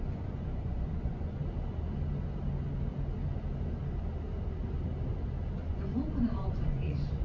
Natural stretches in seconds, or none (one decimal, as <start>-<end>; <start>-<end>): 1.4-5.7